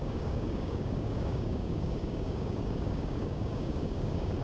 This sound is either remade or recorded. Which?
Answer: remade